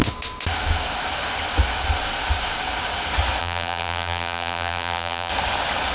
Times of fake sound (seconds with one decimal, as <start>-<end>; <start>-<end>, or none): 3.4-5.3